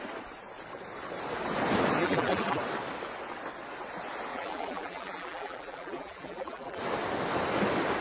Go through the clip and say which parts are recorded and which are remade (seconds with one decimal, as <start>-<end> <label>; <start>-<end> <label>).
0.0-2.0 recorded; 2.0-2.6 remade; 2.6-4.3 recorded; 4.3-6.8 remade; 6.8-8.0 recorded